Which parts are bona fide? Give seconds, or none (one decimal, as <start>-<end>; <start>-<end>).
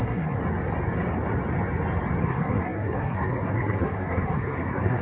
0.4-2.2